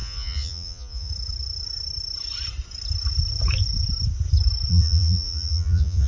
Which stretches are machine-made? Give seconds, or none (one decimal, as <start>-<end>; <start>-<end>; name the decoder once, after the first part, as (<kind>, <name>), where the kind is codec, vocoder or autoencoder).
0.0-1.1 (vocoder, Vocos); 4.7-6.1